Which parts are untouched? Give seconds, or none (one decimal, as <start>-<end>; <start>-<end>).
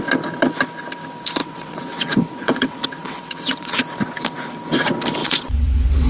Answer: 0.0-1.4; 3.8-5.2